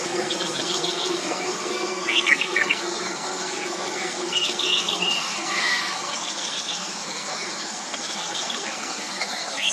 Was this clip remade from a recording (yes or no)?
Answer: yes